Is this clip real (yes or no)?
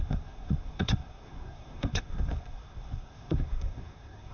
no